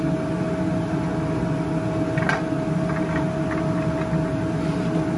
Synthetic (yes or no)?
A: no